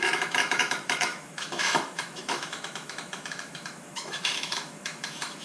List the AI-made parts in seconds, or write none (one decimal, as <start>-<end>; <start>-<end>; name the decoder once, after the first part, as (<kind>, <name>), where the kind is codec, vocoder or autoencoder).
0.0-5.4 (autoencoder, DAC-VAE)